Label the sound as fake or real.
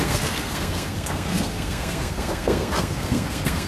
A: fake